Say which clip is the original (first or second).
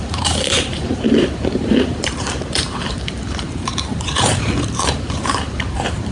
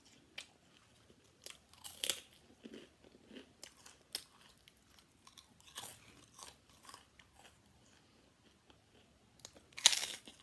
second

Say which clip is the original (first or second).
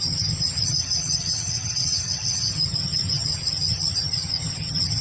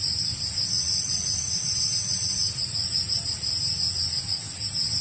second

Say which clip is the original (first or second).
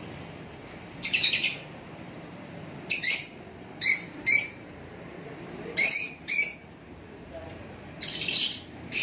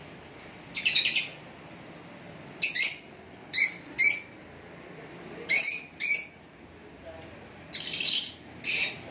second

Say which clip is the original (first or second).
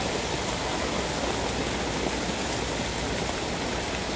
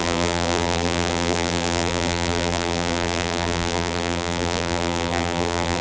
first